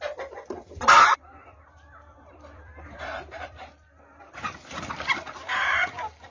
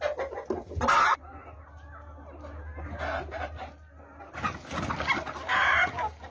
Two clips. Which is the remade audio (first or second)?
first